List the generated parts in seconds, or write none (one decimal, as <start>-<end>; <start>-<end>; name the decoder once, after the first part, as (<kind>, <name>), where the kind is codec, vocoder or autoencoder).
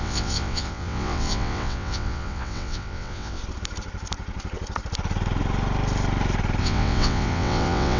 0.0-3.4 (vocoder, WaveNeXt); 6.6-8.0